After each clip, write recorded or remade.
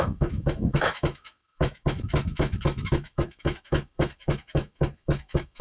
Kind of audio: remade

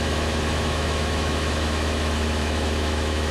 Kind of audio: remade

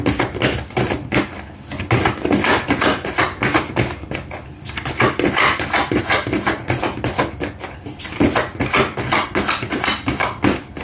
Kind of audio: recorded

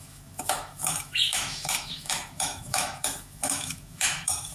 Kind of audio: remade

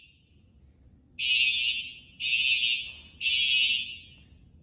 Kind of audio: recorded